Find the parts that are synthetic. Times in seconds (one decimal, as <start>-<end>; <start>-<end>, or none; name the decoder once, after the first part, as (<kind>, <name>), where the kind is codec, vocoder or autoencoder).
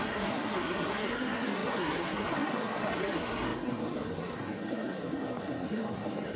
0.0-6.4 (codec, SNAC)